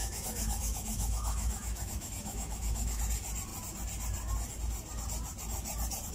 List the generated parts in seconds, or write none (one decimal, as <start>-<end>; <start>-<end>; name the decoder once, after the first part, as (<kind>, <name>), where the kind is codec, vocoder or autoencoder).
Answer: 0.0-3.0 (autoencoder, DAC-VAE)